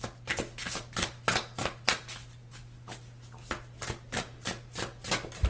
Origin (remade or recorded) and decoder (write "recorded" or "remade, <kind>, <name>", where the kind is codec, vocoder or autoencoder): recorded